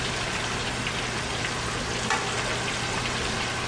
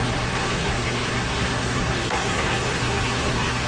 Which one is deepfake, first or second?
second